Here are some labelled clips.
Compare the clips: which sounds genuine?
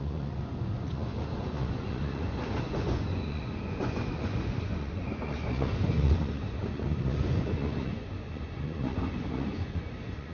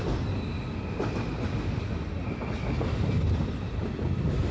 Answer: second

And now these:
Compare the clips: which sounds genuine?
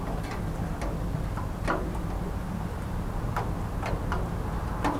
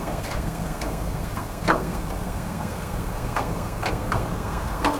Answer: first